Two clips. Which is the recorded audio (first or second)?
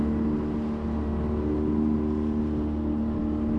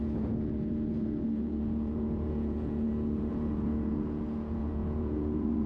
first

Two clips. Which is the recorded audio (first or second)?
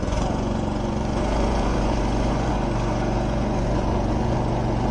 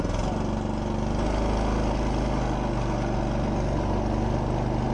second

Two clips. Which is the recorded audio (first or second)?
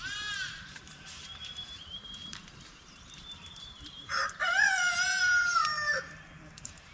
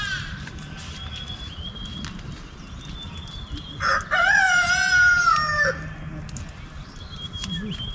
second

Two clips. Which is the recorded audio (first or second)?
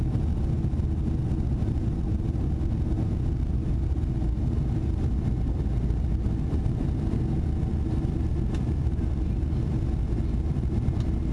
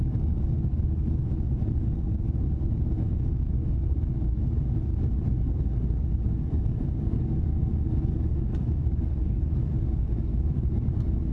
first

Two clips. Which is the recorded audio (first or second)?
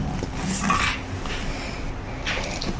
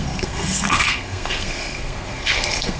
first